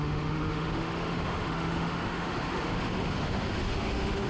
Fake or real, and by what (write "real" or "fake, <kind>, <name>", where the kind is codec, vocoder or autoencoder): fake, autoencoder, DAC-VAE